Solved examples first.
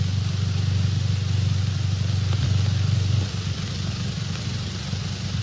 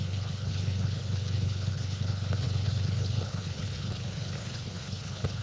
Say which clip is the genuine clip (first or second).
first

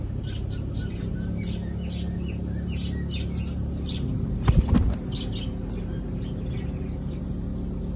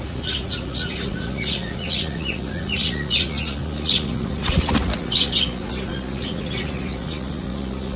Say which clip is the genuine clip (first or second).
first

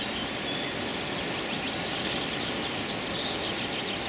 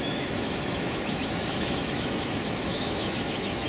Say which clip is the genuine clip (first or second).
first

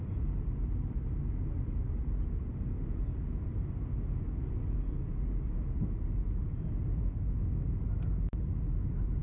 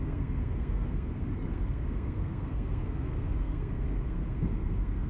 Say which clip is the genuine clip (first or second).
first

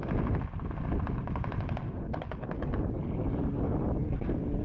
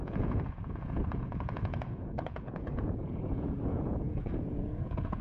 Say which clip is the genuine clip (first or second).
first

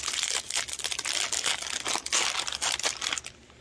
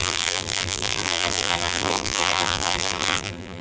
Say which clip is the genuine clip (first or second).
first